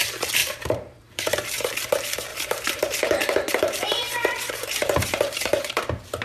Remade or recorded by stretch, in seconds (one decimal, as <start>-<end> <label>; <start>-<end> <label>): 0.0-0.4 recorded; 0.4-1.7 remade; 1.7-2.3 recorded; 2.3-5.8 remade; 5.8-6.2 recorded